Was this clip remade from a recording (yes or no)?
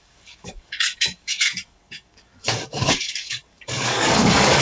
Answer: yes